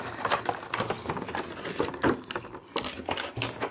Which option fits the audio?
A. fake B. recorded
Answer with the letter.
B